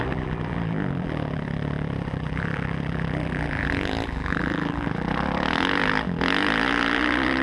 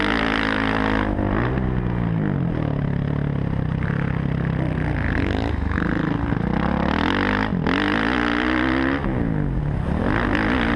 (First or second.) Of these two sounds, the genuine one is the second